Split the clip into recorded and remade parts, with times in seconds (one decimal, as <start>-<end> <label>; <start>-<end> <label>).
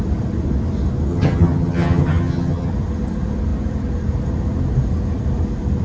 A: 0.0-1.1 recorded; 1.1-2.7 remade; 2.7-5.8 recorded